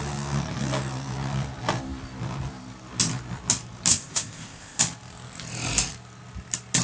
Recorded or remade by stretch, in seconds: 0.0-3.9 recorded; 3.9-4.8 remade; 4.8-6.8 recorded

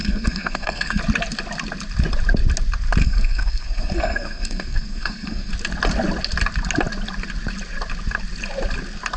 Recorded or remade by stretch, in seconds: 0.0-1.0 remade; 1.0-3.0 recorded; 3.0-5.5 remade; 5.5-9.2 recorded